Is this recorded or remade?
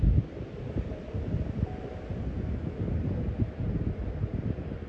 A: recorded